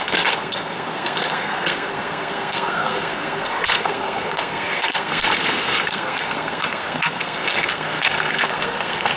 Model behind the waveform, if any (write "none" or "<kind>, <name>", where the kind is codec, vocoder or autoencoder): codec, SNAC